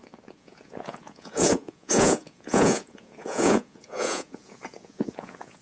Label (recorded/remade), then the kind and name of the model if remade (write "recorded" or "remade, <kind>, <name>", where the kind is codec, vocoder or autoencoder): remade, vocoder, Vocos